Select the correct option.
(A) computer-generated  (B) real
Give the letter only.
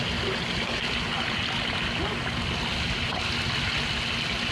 B